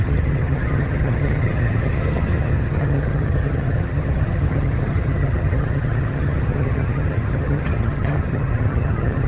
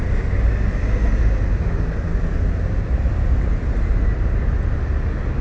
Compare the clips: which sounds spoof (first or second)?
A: first